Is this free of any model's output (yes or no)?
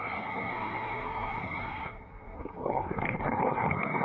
no